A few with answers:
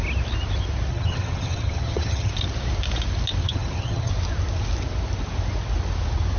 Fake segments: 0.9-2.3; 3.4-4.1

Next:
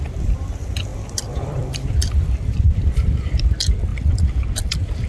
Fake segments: 0.9-3.5; 3.9-5.1

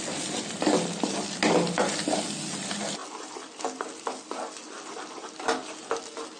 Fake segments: none

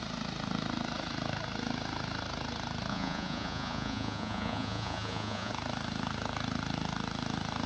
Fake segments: 2.9-5.5

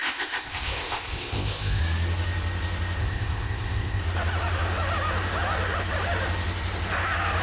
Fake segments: 0.0-1.8; 3.0-4.0

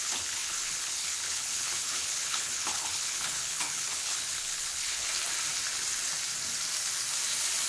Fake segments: 0.0-5.1

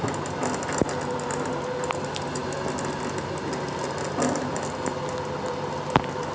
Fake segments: none